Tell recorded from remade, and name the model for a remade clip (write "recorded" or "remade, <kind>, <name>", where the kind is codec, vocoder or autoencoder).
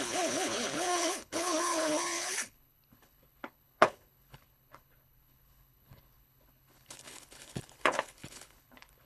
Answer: remade, codec, HILCodec